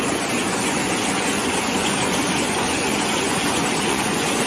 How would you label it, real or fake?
fake